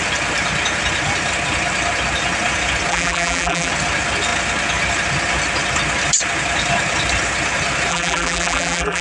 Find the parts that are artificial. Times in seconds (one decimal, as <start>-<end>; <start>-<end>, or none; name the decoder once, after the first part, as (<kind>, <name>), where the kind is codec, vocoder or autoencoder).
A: 2.9-3.7 (vocoder, BigVGAN v2); 7.9-9.0